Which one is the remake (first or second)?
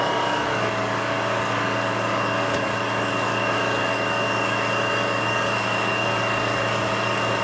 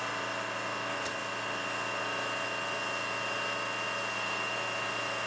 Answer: first